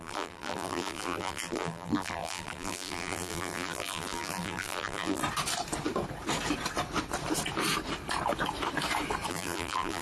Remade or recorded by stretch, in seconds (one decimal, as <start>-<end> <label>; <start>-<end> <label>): 0.0-5.2 remade; 5.2-9.3 recorded; 9.3-10.0 remade